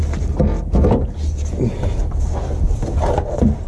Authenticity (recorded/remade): recorded